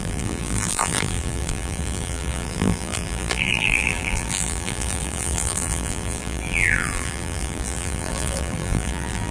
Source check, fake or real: fake